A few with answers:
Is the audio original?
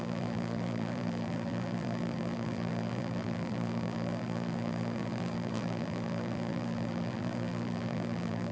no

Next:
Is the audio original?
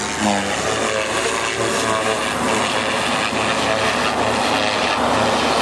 yes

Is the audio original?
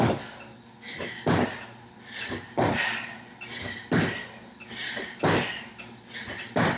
yes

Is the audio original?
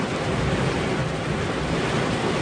yes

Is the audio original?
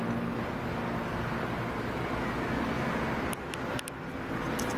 yes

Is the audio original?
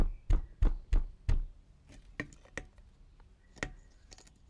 yes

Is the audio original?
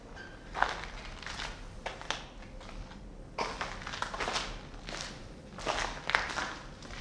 yes